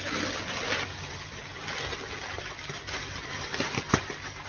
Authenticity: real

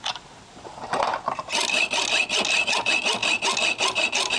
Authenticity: real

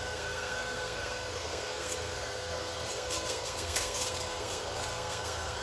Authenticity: fake